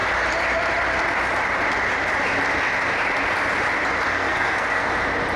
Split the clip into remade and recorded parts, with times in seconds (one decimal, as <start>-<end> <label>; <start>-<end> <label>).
0.0-4.1 recorded; 4.1-4.9 remade; 4.9-5.4 recorded